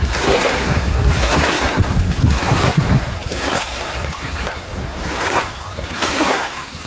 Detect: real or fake fake